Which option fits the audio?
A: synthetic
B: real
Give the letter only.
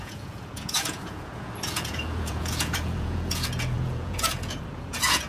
A